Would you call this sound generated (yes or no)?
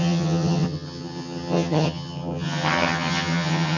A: yes